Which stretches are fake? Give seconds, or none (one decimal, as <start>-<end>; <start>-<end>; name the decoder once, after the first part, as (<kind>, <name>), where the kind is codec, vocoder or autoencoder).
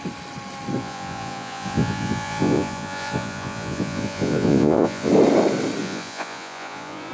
0.8-5.1 (vocoder, Vocos); 5.8-7.1